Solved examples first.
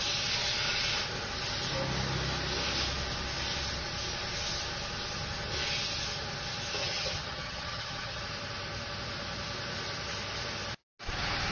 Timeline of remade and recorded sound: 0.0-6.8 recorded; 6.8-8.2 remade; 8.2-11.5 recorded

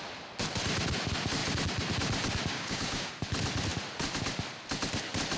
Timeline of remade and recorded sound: 0.0-2.5 recorded; 2.5-3.1 remade; 3.1-5.4 recorded

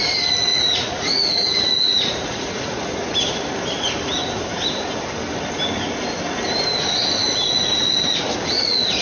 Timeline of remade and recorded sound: 0.0-0.5 recorded; 0.5-1.5 remade; 1.5-1.9 recorded; 1.9-2.9 remade; 2.9-9.0 recorded

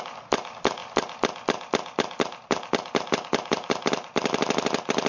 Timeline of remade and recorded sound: 0.0-5.1 recorded

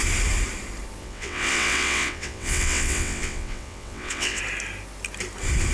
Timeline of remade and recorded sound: 0.0-1.0 recorded; 1.0-4.4 remade; 4.4-5.7 recorded